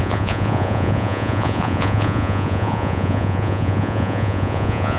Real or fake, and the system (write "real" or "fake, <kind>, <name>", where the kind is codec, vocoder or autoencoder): fake, vocoder, Vocos